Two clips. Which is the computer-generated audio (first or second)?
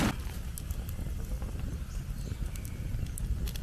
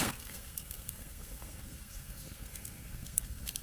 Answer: second